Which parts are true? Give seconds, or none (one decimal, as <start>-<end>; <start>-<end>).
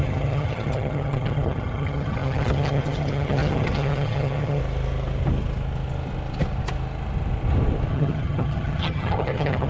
4.6-7.9